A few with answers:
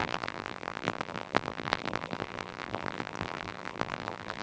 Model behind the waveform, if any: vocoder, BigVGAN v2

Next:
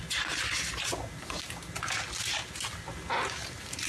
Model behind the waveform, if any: none